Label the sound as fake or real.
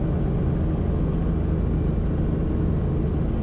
real